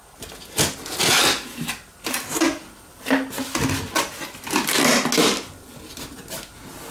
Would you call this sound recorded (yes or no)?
yes